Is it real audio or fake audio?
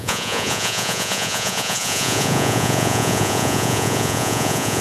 fake